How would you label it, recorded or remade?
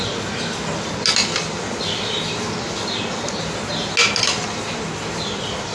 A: recorded